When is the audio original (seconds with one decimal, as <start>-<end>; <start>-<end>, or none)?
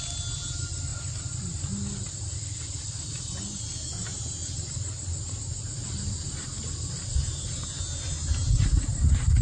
0.0-9.4